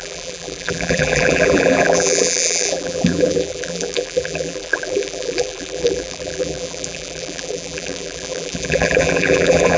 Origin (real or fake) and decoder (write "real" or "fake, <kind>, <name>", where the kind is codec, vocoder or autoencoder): fake, vocoder, BigVGAN v2